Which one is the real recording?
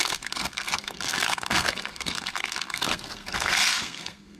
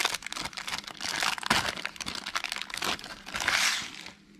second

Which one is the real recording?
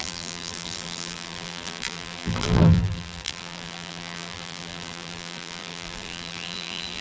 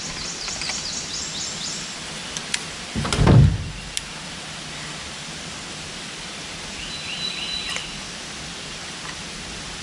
second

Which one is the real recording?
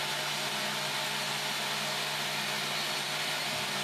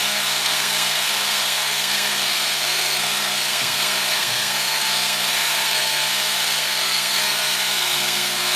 first